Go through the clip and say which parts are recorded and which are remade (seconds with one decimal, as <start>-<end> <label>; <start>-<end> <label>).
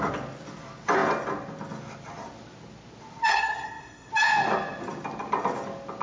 0.0-3.3 recorded; 3.3-4.1 remade; 4.1-6.0 recorded